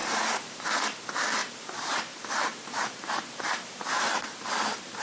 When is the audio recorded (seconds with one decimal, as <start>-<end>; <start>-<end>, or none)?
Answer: 0.8-1.4; 4.4-5.0